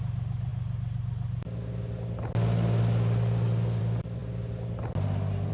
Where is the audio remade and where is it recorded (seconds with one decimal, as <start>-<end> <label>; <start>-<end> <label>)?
0.0-5.5 recorded